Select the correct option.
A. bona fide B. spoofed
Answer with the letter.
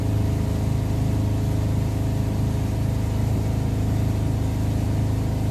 A